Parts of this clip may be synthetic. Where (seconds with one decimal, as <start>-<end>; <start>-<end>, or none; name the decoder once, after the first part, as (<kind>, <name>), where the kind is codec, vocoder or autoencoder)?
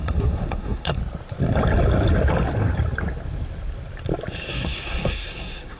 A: 0.0-1.0 (codec, SNAC); 4.5-5.8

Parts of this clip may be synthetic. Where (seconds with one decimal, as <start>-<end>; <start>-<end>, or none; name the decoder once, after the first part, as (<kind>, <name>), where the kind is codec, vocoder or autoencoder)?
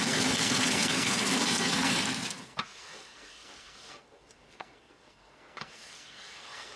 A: 0.0-6.8 (codec, SNAC)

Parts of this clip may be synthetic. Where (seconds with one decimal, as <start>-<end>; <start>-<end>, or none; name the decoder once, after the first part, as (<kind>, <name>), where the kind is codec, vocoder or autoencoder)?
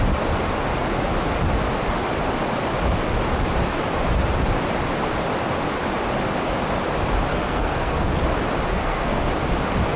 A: 7.3-8.1 (codec, SNAC); 8.7-9.3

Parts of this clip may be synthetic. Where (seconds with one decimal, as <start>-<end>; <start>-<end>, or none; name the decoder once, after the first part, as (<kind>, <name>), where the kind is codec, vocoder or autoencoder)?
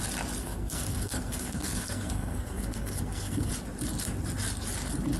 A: 0.4-3.5 (codec, SNAC)